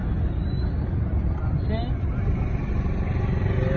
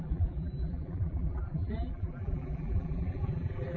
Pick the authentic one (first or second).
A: first